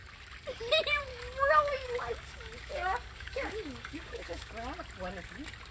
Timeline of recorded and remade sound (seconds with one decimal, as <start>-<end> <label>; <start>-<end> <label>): 0.0-1.1 recorded; 1.1-4.5 remade; 4.5-5.7 recorded